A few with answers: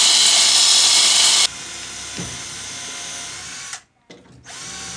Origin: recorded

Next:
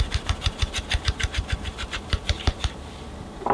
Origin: remade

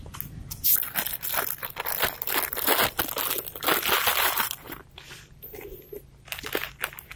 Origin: recorded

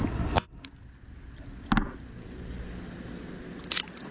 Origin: recorded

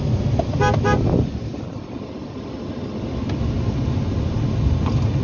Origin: recorded